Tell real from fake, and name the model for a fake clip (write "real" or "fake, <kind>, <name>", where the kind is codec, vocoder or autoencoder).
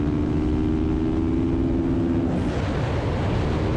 real